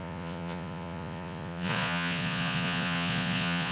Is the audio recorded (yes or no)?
no